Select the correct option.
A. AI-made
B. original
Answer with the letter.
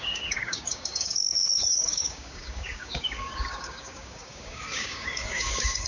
A